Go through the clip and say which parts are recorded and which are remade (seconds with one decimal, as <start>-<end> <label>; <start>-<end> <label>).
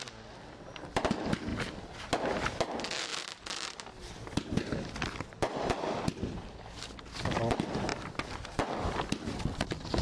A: 0.0-10.0 recorded